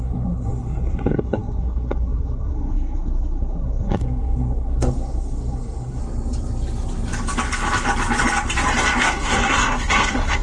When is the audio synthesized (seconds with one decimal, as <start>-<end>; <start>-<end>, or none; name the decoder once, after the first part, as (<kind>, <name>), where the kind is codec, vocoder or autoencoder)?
0.0-6.0 (codec, SNAC); 9.0-10.4